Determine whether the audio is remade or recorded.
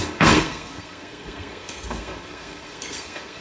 remade